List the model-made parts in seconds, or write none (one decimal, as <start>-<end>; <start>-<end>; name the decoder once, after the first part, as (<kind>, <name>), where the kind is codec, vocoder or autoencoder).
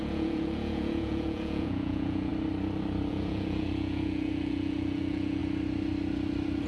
0.0-2.3 (vocoder, Vocos); 3.1-5.4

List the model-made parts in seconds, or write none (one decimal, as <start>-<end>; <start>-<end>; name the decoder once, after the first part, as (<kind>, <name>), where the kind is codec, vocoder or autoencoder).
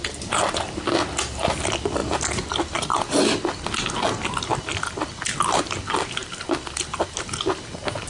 none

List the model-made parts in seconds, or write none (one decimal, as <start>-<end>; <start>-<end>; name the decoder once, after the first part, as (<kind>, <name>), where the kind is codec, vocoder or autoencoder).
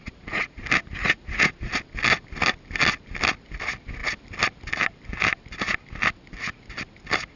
0.0-0.6 (vocoder, Vocos); 1.0-1.7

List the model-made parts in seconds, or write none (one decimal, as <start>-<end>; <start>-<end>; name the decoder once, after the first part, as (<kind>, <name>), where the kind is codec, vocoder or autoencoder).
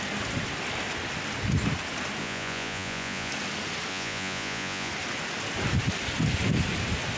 2.2-3.3 (vocoder, Vocos); 3.9-4.9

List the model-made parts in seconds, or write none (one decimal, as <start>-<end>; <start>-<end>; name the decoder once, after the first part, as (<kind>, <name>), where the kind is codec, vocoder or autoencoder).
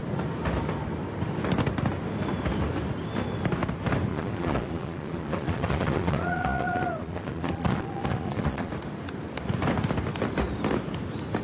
4.1-8.7 (vocoder, Vocos)